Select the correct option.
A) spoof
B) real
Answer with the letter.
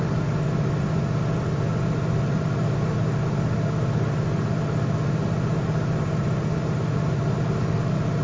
B